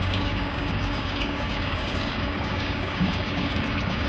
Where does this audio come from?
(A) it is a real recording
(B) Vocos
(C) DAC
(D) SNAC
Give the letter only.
C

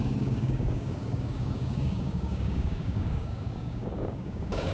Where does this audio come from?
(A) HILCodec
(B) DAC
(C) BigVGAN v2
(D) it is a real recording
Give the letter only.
B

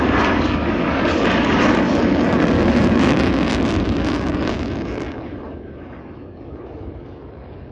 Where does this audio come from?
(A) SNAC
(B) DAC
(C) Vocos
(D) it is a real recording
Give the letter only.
B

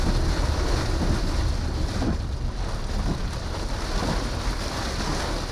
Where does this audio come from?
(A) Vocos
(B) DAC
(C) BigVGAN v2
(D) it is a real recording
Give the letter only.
D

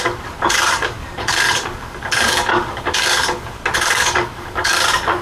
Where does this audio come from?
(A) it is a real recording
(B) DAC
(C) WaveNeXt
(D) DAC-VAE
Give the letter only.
B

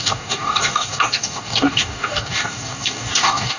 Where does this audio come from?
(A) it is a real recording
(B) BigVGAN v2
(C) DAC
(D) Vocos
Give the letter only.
C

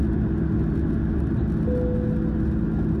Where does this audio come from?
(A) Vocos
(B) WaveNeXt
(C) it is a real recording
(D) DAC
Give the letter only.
C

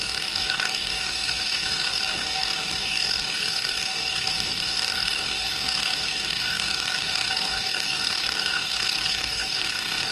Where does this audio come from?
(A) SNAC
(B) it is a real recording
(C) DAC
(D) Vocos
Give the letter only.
C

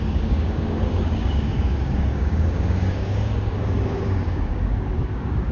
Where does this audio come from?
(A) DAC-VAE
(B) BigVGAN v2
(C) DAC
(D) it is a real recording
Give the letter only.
C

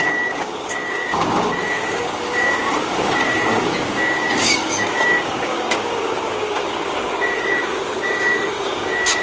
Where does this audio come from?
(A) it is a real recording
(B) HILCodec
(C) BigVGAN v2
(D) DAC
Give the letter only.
D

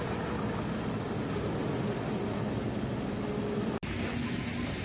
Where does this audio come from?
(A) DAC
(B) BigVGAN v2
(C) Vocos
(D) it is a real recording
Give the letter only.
D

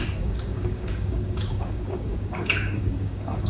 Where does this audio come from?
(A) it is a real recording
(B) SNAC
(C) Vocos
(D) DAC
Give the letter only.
D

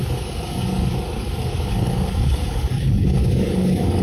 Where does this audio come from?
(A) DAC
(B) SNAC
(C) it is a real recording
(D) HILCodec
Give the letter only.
A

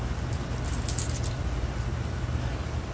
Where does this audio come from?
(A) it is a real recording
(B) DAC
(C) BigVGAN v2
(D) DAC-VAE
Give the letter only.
A